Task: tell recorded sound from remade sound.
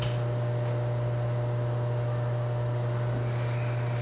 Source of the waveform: recorded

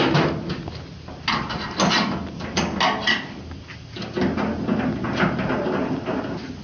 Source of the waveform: recorded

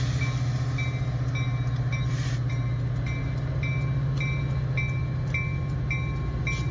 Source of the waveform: recorded